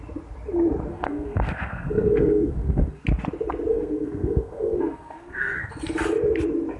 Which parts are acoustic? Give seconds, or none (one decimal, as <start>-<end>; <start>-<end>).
0.0-0.9; 3.0-3.7; 5.7-6.8